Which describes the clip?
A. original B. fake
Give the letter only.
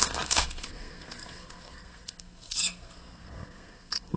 B